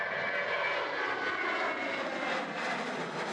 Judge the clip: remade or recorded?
recorded